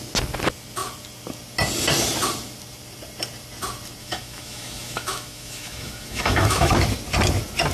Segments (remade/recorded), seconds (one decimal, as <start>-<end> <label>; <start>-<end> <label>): 0.0-4.0 recorded; 4.0-6.7 remade; 6.7-7.7 recorded